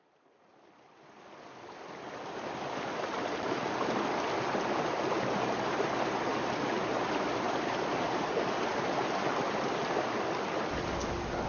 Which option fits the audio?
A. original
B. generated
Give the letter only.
A